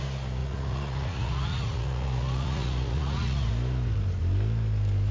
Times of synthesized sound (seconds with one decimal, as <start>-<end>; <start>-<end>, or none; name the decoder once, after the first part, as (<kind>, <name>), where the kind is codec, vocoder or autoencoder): 0.4-3.5 (vocoder, Vocos)

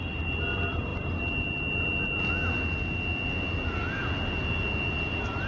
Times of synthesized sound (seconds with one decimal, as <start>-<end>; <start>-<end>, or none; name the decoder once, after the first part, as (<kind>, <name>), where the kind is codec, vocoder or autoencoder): none

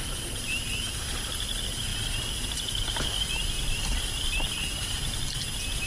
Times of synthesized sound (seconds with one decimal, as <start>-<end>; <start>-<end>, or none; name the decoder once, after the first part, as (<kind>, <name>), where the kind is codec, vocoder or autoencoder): none

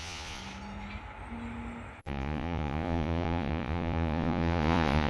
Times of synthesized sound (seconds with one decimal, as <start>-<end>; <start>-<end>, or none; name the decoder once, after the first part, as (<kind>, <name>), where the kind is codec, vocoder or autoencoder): 0.0-0.4 (vocoder, Vocos); 2.0-5.1

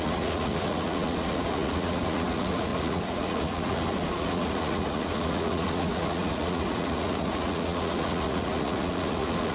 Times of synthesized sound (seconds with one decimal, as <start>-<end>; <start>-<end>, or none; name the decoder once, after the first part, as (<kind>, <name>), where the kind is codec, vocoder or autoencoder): 0.0-9.5 (vocoder, Vocos)